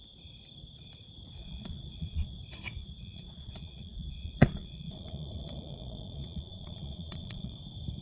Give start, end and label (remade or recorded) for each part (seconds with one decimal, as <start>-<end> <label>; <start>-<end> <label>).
0.0-1.4 recorded; 1.4-2.4 remade; 2.4-2.8 recorded; 2.8-7.6 remade; 7.6-8.0 recorded